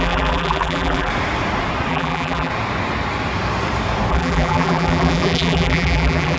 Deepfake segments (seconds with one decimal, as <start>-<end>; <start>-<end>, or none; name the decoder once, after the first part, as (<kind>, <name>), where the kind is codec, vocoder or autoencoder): 0.0-1.1 (vocoder, BigVGAN v2); 1.9-2.5; 4.1-6.4